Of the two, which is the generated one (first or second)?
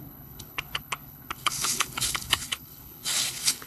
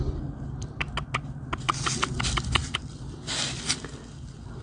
first